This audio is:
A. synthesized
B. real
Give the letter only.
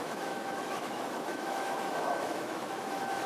A